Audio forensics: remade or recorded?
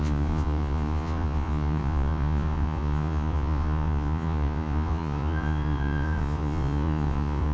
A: remade